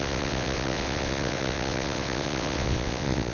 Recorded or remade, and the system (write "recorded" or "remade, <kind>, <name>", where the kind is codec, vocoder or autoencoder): remade, vocoder, WaveNeXt